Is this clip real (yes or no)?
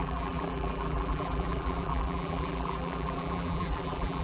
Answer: no